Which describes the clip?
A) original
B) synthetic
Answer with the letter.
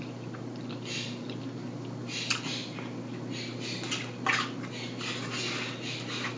A